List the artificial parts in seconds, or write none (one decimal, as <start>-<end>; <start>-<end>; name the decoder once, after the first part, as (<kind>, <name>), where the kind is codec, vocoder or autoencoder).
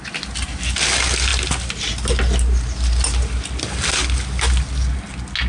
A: none